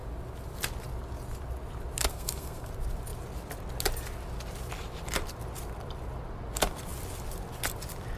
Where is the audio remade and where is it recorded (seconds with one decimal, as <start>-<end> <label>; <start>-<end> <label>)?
0.0-2.1 recorded; 2.1-2.7 remade; 2.7-8.2 recorded